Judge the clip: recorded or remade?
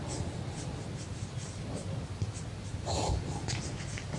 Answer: recorded